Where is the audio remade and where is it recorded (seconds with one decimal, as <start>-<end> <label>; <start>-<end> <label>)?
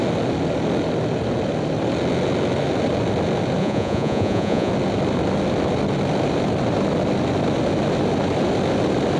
0.0-3.6 recorded; 3.6-4.7 remade; 4.7-9.2 recorded